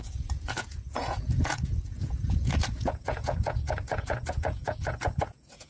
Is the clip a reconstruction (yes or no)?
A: yes